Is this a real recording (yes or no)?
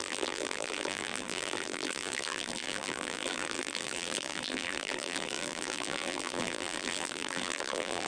no